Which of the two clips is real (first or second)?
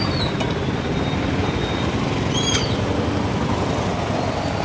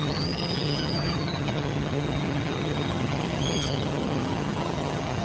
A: first